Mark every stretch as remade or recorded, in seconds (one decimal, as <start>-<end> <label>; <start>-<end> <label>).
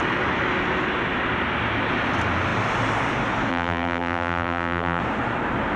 0.0-3.5 recorded; 3.5-5.0 remade; 5.0-5.8 recorded